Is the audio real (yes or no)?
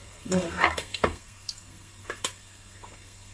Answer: no